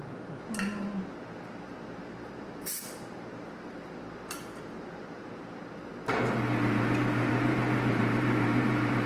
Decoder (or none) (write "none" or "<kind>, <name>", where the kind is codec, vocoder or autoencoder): vocoder, BigVGAN v2